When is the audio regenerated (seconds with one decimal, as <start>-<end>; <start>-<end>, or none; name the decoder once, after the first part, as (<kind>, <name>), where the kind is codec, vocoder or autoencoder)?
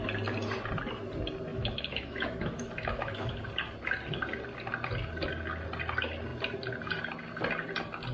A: 1.5-3.5 (autoencoder, DAC-VAE)